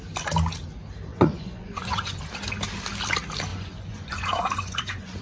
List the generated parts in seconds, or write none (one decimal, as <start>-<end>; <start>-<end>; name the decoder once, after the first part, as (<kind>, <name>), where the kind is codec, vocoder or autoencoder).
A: 1.1-2.2 (vocoder, Vocos); 3.5-5.2